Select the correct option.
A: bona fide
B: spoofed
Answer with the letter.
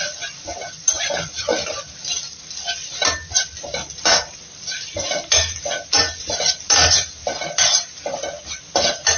A